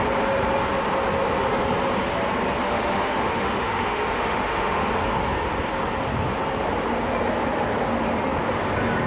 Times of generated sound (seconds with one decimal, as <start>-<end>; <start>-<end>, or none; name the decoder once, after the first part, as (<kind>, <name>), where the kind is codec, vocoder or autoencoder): 2.6-4.9 (autoencoder, DAC-VAE)